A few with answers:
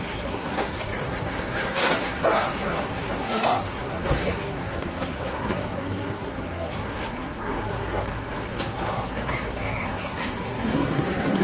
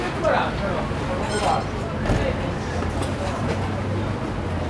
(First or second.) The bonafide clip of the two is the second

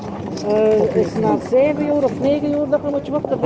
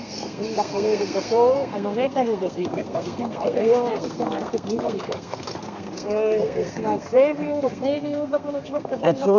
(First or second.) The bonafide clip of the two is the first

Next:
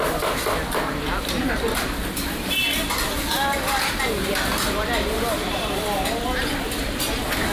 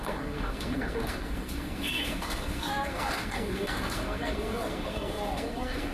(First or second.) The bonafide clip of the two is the first